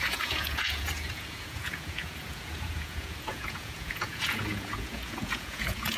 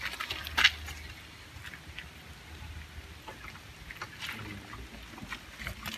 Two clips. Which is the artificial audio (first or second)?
first